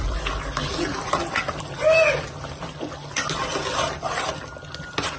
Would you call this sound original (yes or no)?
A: yes